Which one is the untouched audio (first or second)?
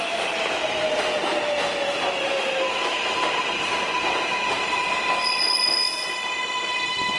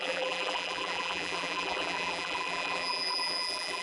first